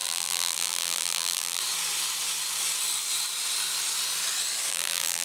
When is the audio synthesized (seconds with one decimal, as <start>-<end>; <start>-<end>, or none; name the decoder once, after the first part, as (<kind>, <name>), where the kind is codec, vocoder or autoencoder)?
0.0-1.6 (vocoder, BigVGAN v2); 4.7-5.2